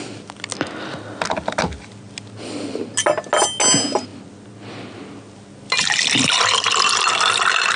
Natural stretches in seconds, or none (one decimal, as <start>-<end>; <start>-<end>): 0.0-7.8

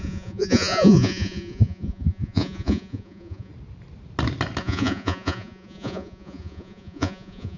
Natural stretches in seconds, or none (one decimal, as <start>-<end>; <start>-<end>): 3.5-4.6

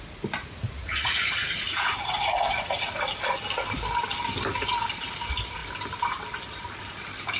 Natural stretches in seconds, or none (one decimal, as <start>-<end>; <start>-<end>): 0.0-0.4; 3.0-7.4

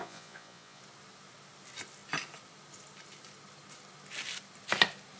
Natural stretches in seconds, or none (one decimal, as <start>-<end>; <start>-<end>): 0.8-5.2

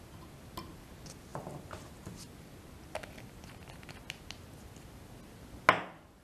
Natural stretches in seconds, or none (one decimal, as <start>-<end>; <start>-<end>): 0.0-6.2

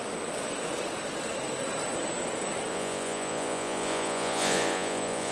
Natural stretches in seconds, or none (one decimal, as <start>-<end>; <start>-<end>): 0.0-2.7

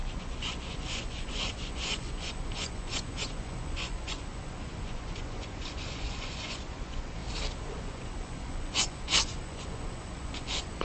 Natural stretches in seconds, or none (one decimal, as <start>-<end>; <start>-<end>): 7.2-7.7

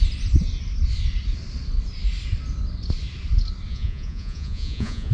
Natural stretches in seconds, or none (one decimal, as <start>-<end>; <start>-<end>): 0.0-3.7